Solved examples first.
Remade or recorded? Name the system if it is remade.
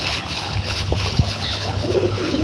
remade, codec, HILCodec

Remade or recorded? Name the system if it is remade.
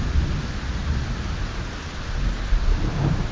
recorded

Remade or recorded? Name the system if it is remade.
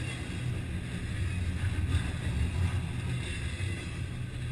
recorded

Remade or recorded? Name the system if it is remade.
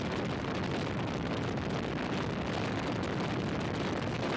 recorded